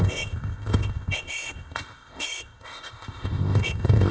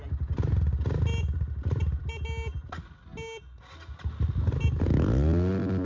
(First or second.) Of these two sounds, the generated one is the first